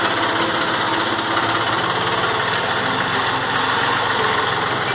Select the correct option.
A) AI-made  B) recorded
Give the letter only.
B